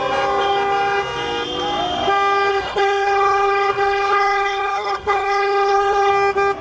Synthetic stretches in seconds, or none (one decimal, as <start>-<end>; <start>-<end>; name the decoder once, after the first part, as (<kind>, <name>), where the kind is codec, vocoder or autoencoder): 2.5-6.1 (codec, SNAC)